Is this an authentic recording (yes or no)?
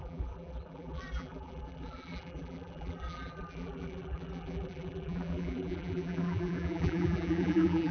no